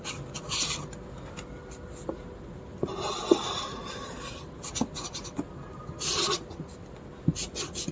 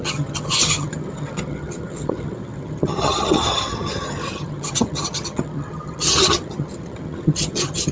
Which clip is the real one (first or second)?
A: first